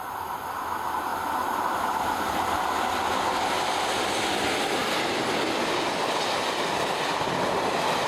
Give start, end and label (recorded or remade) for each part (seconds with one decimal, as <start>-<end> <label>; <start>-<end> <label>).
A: 0.0-8.1 recorded